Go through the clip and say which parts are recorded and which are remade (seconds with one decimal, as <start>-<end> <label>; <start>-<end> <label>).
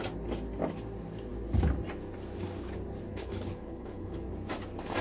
0.0-3.1 recorded; 3.1-4.3 remade; 4.3-5.0 recorded